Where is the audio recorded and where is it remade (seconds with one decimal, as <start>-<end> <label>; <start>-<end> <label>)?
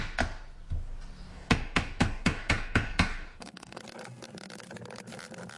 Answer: 0.0-1.3 recorded; 1.3-3.8 remade; 3.8-5.6 recorded